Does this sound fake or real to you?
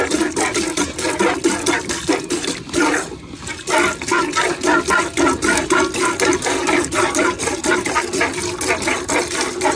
real